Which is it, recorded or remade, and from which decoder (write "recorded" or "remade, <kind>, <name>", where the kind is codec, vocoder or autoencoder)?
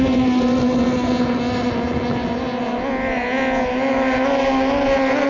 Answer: recorded